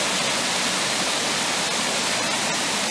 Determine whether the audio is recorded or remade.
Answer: recorded